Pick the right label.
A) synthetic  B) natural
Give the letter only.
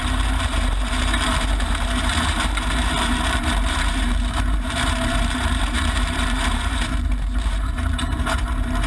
A